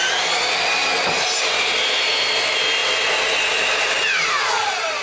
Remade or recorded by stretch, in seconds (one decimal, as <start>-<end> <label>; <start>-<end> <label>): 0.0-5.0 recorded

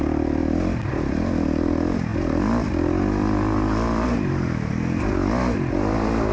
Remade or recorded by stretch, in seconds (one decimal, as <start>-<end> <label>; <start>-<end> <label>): 0.0-6.3 recorded

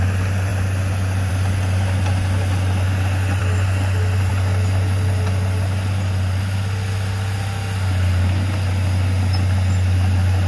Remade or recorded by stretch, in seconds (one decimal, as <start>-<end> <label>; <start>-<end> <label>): 0.0-10.5 recorded

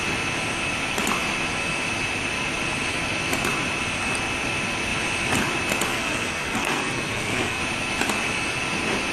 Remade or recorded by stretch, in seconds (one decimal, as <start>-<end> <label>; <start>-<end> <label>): 0.0-5.9 recorded; 5.9-7.6 remade; 7.6-9.1 recorded

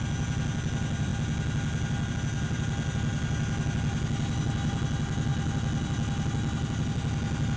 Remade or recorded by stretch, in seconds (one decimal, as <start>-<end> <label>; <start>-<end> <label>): 0.0-7.6 recorded

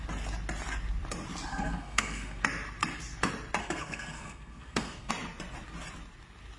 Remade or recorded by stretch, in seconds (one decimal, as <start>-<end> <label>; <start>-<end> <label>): 0.0-1.5 recorded; 1.5-2.4 remade; 2.4-3.6 recorded; 3.6-5.1 remade; 5.1-6.6 recorded

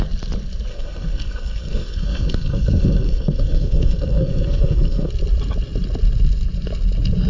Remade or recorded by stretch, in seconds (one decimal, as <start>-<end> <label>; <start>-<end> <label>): 0.0-0.7 recorded; 0.7-5.1 remade; 5.1-7.3 recorded